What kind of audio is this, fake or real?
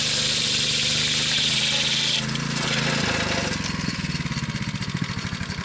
real